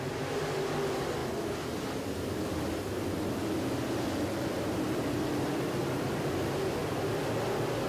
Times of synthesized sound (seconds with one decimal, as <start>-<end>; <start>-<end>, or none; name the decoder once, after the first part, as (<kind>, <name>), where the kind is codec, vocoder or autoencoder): none